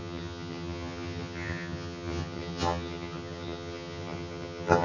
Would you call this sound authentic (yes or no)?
no